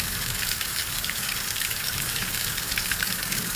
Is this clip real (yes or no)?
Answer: no